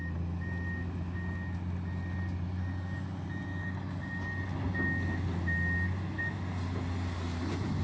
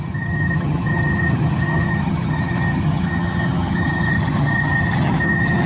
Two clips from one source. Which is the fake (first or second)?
second